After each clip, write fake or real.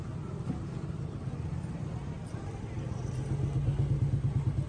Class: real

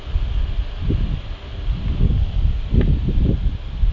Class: real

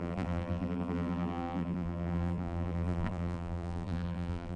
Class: fake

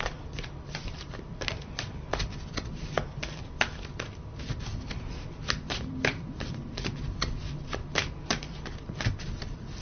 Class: fake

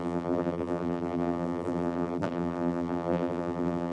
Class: fake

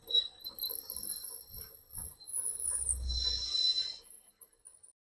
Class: real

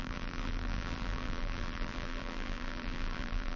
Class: fake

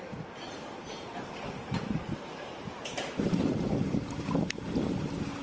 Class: real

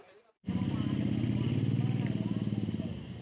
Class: real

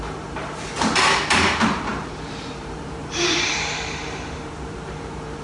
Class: fake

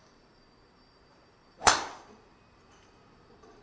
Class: fake